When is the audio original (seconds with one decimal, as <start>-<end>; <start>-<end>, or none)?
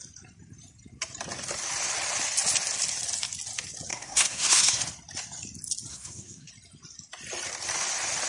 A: 0.0-3.9; 4.8-5.9; 6.5-8.3